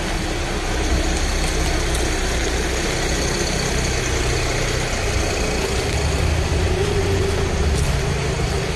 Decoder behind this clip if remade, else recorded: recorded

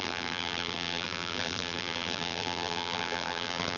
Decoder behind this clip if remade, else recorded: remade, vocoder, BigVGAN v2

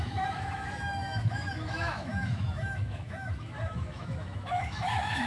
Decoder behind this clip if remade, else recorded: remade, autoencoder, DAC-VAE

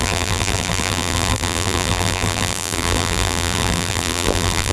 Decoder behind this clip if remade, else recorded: remade, vocoder, BigVGAN v2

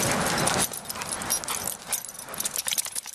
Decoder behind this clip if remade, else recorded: recorded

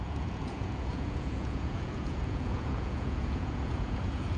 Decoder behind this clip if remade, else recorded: remade, vocoder, Vocos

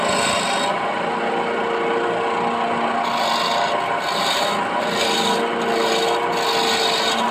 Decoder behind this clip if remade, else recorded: recorded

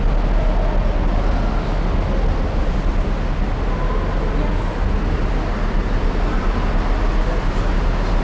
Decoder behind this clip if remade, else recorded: recorded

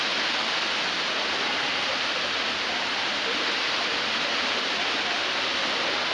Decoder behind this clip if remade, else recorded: recorded